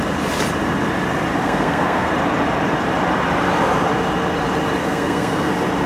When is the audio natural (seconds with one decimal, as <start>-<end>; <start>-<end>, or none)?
0.0-1.3; 2.1-4.8; 5.5-5.9